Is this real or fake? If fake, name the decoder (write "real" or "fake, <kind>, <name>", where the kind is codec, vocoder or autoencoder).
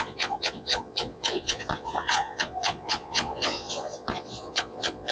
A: fake, vocoder, Vocos